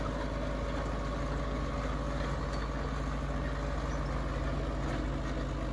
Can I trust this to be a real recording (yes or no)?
yes